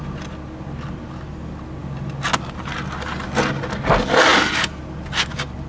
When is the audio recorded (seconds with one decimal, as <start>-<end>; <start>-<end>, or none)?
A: 0.0-5.7